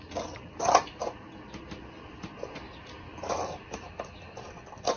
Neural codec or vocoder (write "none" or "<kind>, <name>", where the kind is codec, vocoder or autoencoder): none